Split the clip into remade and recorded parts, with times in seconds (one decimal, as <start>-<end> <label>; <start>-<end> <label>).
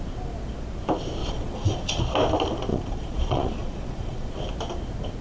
0.0-1.2 recorded; 1.2-2.0 remade; 2.0-2.7 recorded; 2.7-4.3 remade; 4.3-5.2 recorded